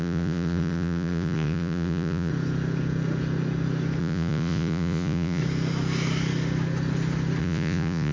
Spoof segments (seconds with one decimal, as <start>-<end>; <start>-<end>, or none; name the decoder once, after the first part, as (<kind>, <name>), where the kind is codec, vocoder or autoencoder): 0.0-2.3 (vocoder, Vocos); 4.0-5.4; 7.4-8.1